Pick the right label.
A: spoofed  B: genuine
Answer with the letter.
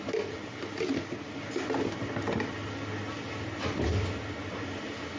B